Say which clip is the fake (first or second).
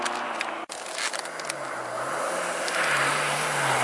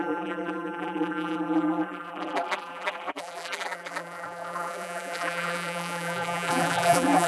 second